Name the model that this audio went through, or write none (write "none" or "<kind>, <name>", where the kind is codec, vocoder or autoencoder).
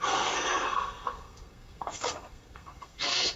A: codec, SNAC